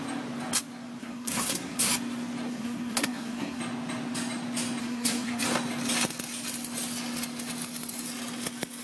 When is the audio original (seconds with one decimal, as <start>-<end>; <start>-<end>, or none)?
0.0-1.0; 1.9-2.5; 3.6-4.8; 5.4-8.8